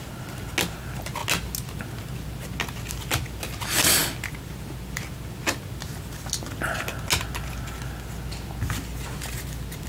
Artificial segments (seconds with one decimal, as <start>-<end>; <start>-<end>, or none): none